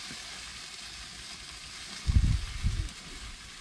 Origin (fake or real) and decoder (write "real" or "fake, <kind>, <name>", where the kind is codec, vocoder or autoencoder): real